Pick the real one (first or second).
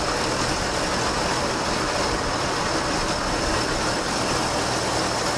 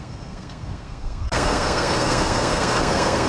first